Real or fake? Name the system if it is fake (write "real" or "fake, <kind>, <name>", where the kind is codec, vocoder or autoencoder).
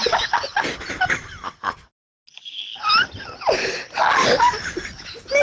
real